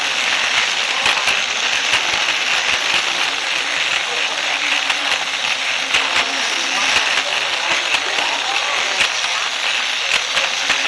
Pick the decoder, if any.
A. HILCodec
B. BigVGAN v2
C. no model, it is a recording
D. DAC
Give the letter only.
C